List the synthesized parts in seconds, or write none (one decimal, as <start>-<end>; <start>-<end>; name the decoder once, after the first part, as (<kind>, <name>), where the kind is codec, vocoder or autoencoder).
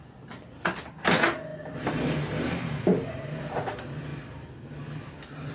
none